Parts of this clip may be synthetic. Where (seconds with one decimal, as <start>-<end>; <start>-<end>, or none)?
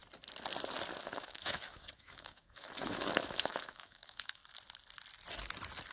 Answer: 1.0-4.4